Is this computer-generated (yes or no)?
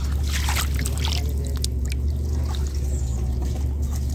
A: no